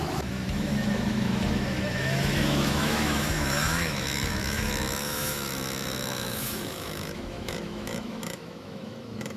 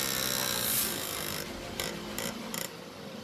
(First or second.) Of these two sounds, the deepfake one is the first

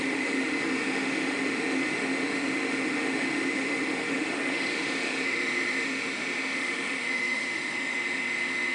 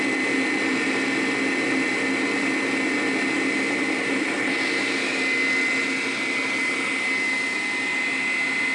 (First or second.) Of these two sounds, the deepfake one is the first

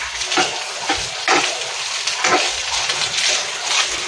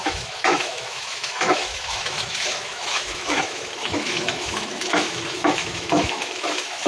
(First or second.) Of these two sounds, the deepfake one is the second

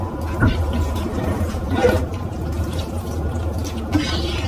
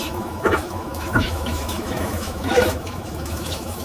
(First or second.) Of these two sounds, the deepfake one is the second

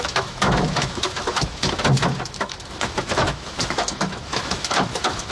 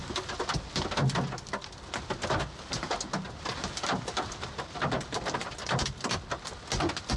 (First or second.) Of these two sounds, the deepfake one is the first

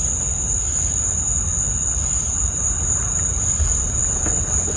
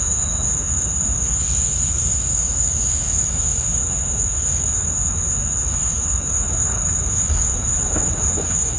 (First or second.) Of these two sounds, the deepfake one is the second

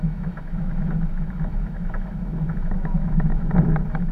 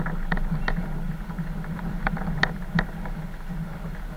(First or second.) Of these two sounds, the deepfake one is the first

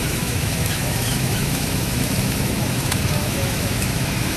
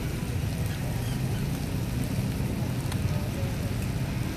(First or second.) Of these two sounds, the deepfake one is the first